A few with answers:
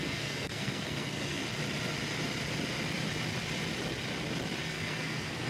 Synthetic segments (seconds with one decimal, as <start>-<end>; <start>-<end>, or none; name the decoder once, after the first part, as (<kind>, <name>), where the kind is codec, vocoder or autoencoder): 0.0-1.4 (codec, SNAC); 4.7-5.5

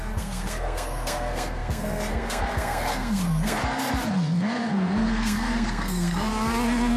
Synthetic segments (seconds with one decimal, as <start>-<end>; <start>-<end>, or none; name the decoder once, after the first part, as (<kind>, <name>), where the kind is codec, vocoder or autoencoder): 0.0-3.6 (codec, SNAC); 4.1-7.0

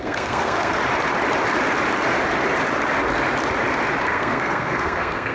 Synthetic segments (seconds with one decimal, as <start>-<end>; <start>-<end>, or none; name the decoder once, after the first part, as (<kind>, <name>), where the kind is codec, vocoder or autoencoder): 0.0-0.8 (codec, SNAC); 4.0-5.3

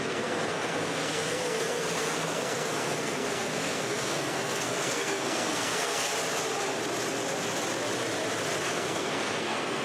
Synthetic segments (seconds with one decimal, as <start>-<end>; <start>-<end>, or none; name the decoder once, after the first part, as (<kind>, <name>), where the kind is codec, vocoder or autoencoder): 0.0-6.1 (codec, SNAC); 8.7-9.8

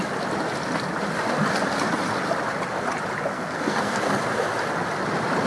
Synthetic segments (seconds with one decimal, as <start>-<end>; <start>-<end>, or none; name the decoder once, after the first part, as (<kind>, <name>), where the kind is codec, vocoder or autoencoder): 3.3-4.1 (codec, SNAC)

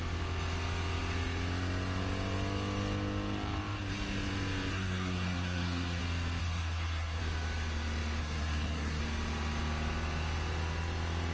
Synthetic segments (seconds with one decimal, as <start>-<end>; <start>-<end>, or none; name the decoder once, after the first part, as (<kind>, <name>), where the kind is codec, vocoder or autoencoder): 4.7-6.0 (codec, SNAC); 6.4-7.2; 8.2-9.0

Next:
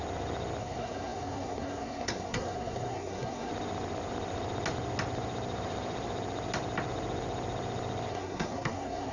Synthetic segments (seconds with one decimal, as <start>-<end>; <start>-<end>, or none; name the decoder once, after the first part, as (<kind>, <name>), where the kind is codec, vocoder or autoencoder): 0.6-3.5 (codec, SNAC); 8.1-9.1